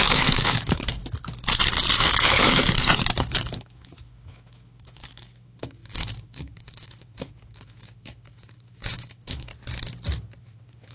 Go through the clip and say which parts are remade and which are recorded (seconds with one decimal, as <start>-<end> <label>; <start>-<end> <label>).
0.0-1.0 remade; 1.0-2.0 recorded; 2.0-2.6 remade; 2.6-3.2 recorded; 3.2-9.5 remade; 9.5-10.4 recorded; 10.4-10.9 remade